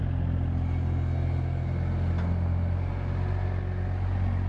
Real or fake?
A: real